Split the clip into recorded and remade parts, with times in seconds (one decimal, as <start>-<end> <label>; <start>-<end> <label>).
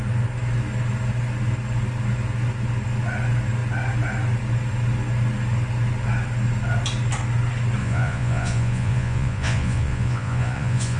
0.0-7.8 recorded; 7.8-11.0 remade